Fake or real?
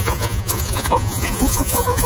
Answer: fake